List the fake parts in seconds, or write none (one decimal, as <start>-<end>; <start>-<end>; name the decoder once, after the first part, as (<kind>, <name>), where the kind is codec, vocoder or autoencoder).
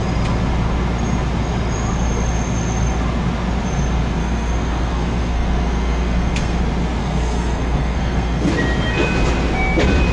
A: 4.2-6.6 (codec, SNAC); 7.0-8.5